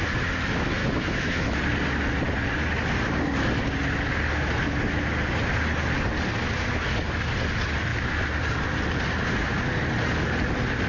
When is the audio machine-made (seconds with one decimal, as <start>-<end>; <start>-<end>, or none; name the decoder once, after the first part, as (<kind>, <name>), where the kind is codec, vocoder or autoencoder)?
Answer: 0.8-1.6 (autoencoder, DAC-VAE)